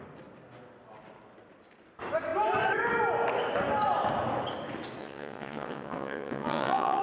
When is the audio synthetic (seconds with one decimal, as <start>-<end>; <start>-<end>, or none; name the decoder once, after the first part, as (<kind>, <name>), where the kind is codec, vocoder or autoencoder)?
5.0-7.0 (vocoder, WaveNeXt)